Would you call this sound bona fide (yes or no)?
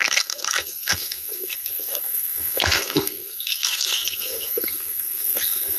no